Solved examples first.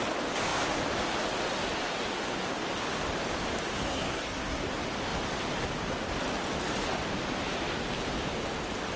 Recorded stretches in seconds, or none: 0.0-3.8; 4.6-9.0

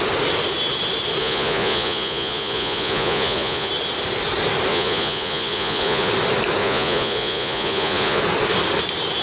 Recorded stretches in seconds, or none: 0.0-1.2; 3.7-4.7; 6.1-6.6; 8.2-9.2

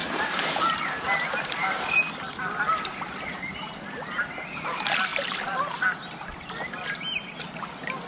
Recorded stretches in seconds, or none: 0.0-8.1

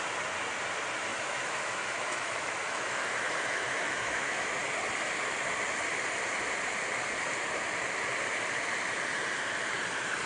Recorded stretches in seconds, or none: 0.0-1.1; 4.5-10.3

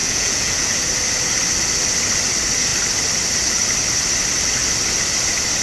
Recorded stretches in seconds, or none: 0.8-5.6

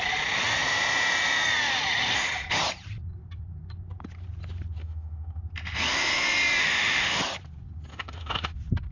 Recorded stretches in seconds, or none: 0.0-4.8; 5.4-6.6; 7.2-7.9; 8.5-8.9

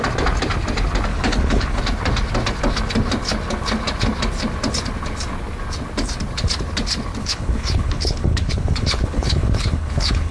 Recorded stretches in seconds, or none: 0.0-1.1; 1.8-7.2

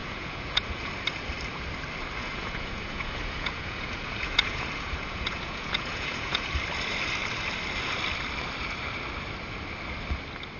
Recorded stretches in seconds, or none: 0.8-2.2; 6.5-10.6